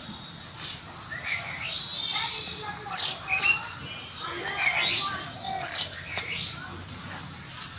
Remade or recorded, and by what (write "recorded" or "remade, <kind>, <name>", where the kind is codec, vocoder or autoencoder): recorded